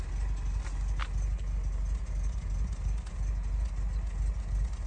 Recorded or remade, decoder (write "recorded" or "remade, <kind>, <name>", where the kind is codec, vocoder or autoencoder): recorded